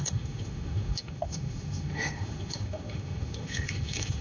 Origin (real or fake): fake